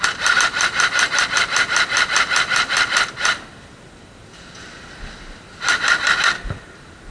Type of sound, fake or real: real